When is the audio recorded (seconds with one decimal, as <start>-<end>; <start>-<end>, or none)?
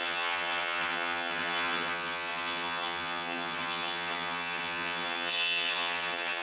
none